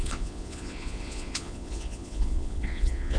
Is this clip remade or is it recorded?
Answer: remade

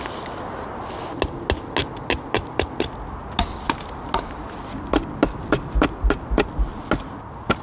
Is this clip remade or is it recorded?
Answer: recorded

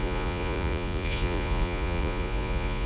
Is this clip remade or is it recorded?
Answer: remade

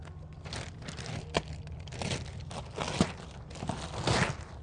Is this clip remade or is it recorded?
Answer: recorded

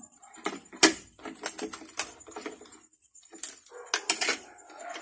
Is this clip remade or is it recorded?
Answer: recorded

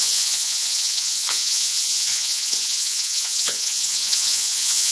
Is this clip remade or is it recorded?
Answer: remade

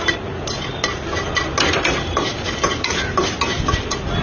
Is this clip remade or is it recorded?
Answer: recorded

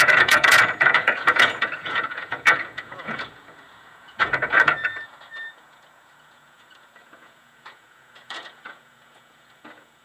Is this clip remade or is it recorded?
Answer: remade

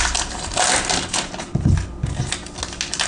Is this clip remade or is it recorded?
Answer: recorded